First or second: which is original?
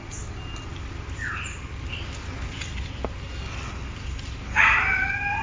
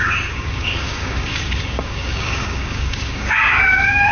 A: first